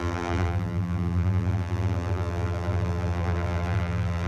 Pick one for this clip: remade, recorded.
remade